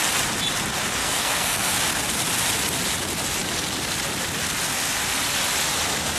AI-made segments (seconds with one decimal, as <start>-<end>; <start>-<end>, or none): 1.0-1.7